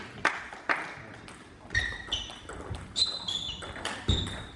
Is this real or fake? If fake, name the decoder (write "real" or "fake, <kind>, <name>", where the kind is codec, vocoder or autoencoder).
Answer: real